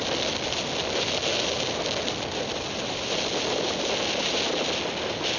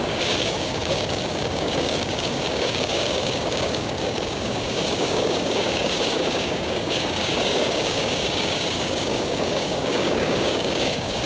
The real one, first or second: first